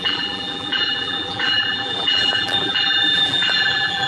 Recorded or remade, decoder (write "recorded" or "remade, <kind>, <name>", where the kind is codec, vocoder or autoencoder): remade, vocoder, BigVGAN v2